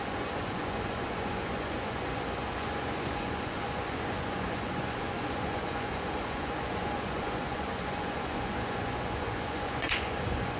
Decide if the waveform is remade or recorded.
remade